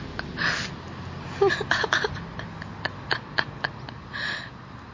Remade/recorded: recorded